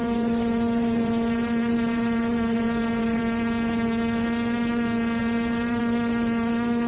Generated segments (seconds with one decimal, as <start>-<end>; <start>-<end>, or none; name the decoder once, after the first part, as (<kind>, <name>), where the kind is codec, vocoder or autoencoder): 0.0-3.2 (vocoder, BigVGAN v2); 5.2-5.8